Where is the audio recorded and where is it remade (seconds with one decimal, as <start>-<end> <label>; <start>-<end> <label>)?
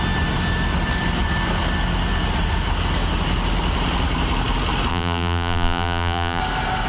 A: 0.0-4.9 recorded; 4.9-6.4 remade; 6.4-6.9 recorded